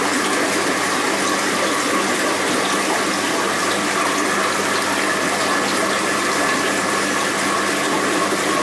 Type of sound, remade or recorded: recorded